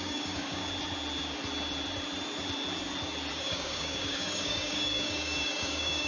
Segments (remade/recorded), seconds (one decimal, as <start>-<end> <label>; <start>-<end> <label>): 0.0-0.6 remade; 0.6-3.4 recorded; 3.4-6.1 remade